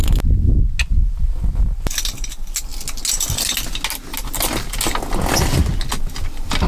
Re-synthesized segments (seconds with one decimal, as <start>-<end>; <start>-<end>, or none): none